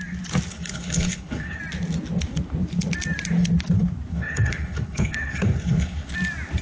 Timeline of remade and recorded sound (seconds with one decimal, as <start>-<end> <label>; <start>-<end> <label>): 0.0-0.5 recorded; 0.5-1.6 remade; 1.6-4.1 recorded; 4.1-6.1 remade; 6.1-6.6 recorded